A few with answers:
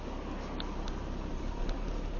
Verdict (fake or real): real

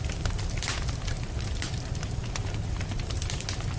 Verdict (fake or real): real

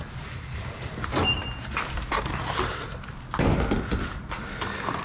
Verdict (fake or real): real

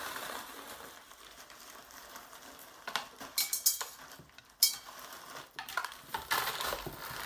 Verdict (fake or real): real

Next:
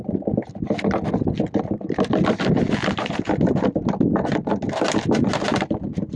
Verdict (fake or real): real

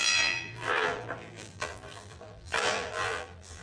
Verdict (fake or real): fake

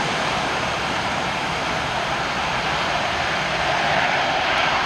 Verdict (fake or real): fake